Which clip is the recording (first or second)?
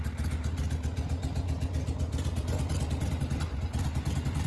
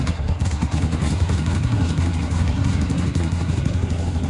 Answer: first